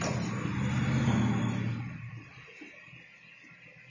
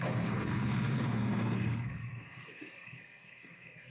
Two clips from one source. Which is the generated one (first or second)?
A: second